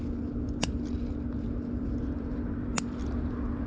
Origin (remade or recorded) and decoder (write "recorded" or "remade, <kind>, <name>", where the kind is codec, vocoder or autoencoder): remade, vocoder, BigVGAN v2